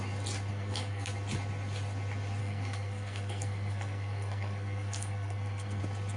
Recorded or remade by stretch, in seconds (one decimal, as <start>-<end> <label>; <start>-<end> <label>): 0.0-0.5 recorded; 0.5-1.1 remade; 1.1-2.4 recorded; 2.4-5.8 remade; 5.8-6.2 recorded